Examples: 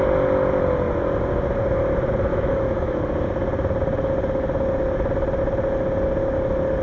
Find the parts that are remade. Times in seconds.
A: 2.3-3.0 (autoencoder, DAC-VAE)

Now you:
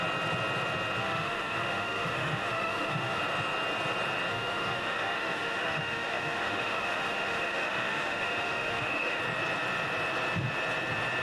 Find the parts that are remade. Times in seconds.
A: 1.0-3.2 (autoencoder, DAC-VAE); 4.3-9.2

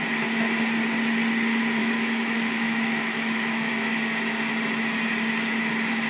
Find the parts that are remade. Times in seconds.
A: 1.8-3.7 (autoencoder, DAC-VAE)

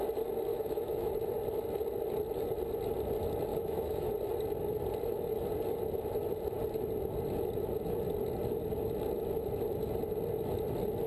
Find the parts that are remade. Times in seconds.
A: 0.5-1.1 (autoencoder, DAC-VAE); 3.5-4.1

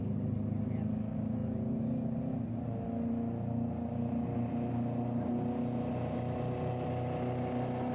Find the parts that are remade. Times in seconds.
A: none

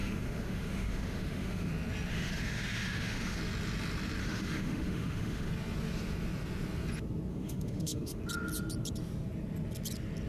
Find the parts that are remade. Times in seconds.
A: 0.0-1.7 (autoencoder, DAC-VAE); 2.1-3.4; 4.2-5.5; 7.3-8.2

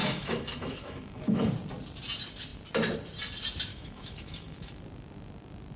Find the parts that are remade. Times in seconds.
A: 0.0-1.5 (autoencoder, DAC-VAE); 3.7-4.8